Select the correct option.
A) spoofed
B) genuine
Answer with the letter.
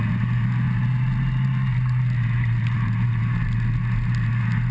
B